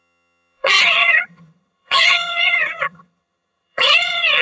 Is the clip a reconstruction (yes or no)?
yes